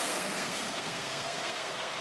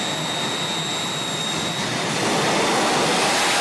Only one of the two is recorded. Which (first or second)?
second